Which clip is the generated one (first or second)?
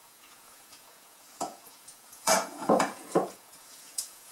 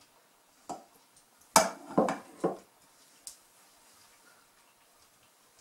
first